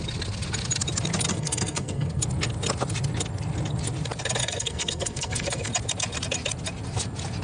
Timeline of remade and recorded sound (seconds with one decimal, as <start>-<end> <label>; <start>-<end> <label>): 0.0-1.3 recorded; 1.3-2.2 remade; 2.2-4.4 recorded; 4.4-5.7 remade; 5.7-7.4 recorded